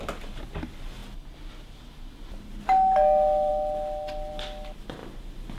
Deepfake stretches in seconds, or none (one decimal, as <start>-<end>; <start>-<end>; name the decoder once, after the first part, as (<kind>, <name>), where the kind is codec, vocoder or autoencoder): none